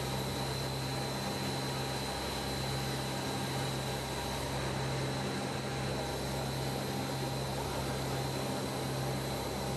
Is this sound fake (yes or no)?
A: no